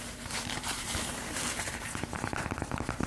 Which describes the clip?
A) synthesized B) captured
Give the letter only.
A